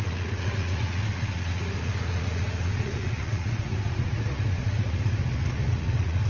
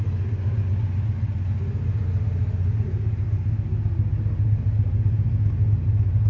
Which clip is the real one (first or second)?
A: second